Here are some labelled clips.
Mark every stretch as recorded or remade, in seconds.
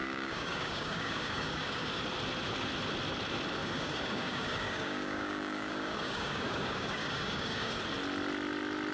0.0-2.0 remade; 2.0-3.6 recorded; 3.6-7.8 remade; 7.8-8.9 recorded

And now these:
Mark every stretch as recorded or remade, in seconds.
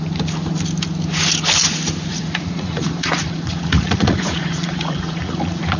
0.0-2.1 recorded; 2.1-5.8 remade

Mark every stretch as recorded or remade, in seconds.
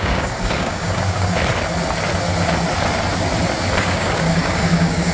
0.0-1.4 remade; 1.4-3.8 recorded; 3.8-5.1 remade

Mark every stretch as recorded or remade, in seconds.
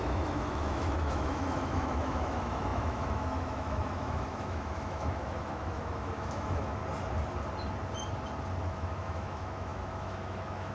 0.0-6.8 remade; 6.8-8.6 recorded; 8.6-10.7 remade